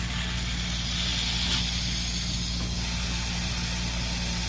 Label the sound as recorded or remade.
recorded